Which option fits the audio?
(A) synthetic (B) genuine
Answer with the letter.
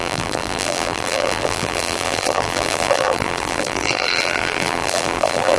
A